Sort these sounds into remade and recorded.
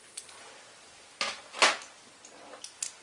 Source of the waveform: recorded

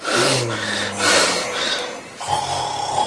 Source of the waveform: recorded